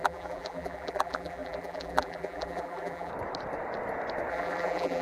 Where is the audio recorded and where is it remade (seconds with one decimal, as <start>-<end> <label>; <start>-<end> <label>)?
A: 0.0-3.1 remade; 3.1-4.3 recorded; 4.3-5.0 remade